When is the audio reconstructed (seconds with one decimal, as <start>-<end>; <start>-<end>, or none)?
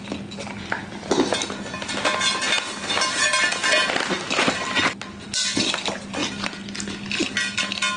none